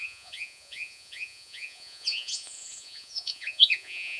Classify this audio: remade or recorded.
remade